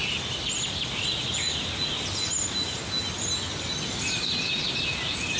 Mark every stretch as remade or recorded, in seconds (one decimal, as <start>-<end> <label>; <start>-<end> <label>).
0.0-5.4 recorded